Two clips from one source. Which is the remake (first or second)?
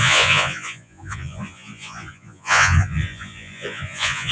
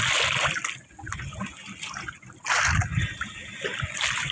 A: first